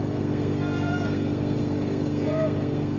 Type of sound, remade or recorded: remade